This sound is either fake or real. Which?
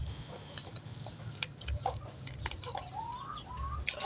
real